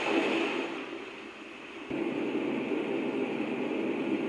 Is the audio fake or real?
real